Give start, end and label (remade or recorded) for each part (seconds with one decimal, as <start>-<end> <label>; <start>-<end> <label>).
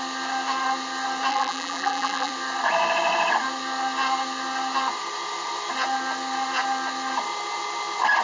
0.0-1.3 recorded; 1.3-2.3 remade; 2.3-8.2 recorded